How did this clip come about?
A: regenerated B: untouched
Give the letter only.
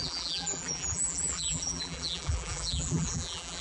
A